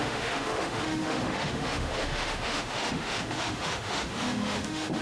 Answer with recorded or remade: remade